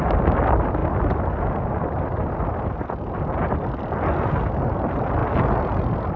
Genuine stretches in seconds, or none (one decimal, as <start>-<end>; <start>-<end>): 0.0-6.2

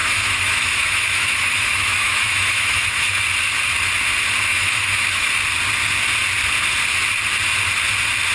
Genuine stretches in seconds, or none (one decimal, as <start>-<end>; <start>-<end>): 3.2-4.5; 5.3-8.3